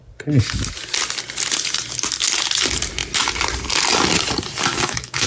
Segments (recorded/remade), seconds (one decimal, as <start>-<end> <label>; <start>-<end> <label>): 0.0-4.7 recorded; 4.7-5.3 remade

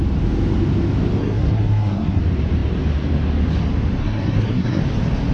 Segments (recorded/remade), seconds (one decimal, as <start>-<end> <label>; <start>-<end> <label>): 0.0-1.2 recorded; 1.2-2.2 remade; 2.2-4.0 recorded; 4.0-4.8 remade; 4.8-5.3 recorded

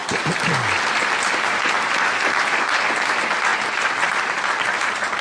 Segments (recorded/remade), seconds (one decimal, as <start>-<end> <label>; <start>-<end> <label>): 0.0-3.5 recorded; 3.5-4.4 remade; 4.4-5.2 recorded

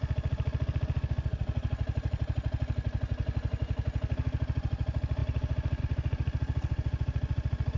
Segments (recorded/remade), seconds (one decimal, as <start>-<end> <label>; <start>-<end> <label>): 0.0-7.8 recorded

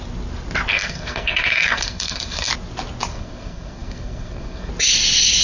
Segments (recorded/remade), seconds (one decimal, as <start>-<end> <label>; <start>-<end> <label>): 0.0-0.7 recorded; 0.7-2.5 remade; 2.5-3.1 recorded; 3.1-4.7 remade; 4.7-5.4 recorded